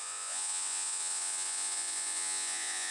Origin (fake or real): fake